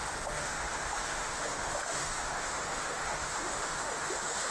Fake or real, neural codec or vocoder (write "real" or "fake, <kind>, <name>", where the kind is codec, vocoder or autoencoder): fake, autoencoder, DAC-VAE